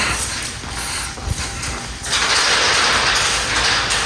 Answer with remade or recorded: recorded